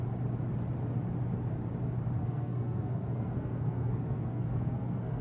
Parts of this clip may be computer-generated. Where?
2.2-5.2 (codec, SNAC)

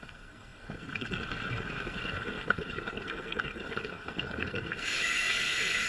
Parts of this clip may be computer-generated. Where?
0.0-5.9 (codec, SNAC)